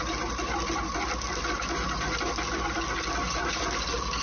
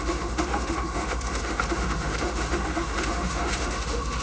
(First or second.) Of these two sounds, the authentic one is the first